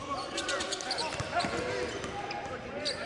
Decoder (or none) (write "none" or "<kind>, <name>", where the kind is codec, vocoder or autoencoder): none